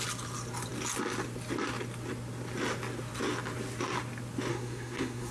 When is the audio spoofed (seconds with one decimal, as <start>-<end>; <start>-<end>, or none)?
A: 4.5-5.3